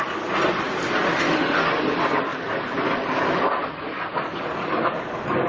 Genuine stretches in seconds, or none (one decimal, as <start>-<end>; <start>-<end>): 0.0-1.1; 1.7-5.5